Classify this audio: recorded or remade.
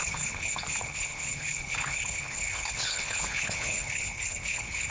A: remade